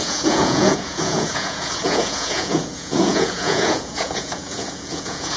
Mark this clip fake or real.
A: fake